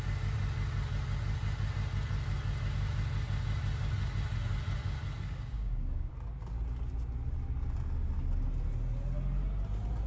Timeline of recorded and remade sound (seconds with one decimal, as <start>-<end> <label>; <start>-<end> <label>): 0.0-5.3 recorded; 5.3-6.1 remade; 6.1-10.1 recorded